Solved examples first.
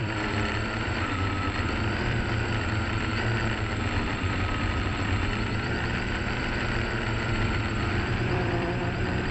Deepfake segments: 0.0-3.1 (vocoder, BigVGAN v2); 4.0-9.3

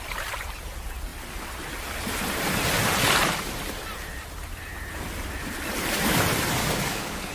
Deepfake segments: 6.6-7.3 (codec, DAC)

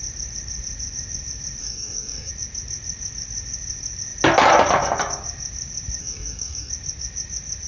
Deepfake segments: 1.6-2.3 (codec, DAC); 6.0-6.7